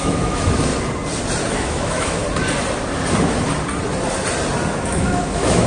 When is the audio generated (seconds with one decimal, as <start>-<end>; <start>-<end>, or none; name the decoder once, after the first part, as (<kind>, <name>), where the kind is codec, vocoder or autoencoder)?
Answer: 0.0-0.7 (autoencoder, DAC-VAE); 1.5-2.2; 4.7-5.7